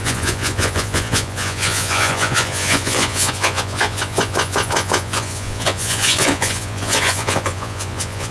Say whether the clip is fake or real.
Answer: fake